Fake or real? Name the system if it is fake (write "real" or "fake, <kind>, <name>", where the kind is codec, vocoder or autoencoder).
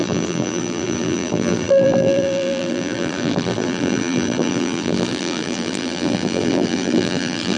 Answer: fake, vocoder, BigVGAN v2